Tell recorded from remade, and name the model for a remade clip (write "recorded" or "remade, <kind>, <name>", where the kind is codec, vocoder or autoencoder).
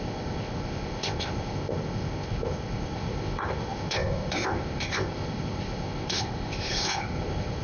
remade, codec, ZipCodec